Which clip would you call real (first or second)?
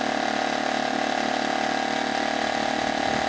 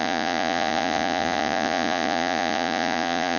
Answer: first